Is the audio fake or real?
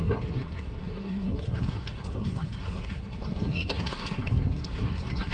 fake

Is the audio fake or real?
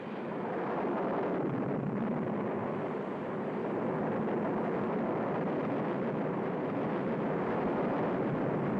real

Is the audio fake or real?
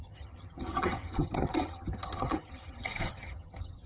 fake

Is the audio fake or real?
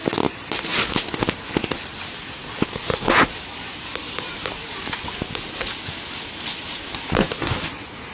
real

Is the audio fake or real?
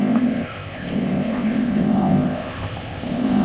fake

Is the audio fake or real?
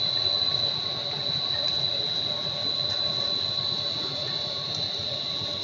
fake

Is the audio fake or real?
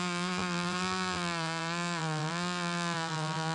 fake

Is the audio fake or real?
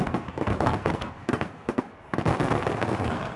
fake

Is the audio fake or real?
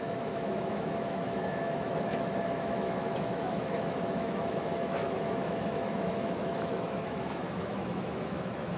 fake